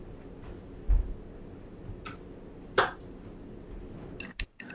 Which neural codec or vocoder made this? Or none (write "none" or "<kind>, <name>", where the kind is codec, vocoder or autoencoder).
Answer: none